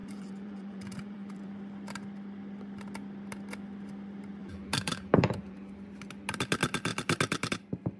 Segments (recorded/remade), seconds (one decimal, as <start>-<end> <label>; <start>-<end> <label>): 0.0-1.5 remade; 1.5-4.4 recorded; 4.4-5.7 remade; 5.7-8.0 recorded